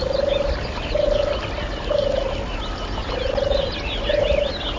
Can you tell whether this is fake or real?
real